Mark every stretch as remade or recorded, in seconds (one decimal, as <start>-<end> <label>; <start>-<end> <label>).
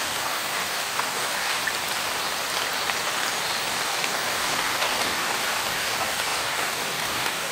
0.0-1.6 remade; 1.6-3.6 recorded; 3.6-7.5 remade